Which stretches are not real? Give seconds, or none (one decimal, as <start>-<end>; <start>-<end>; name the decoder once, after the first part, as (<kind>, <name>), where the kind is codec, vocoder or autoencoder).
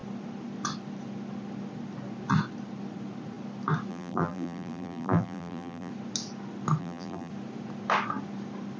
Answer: 3.9-5.9 (vocoder, BigVGAN v2); 6.8-7.3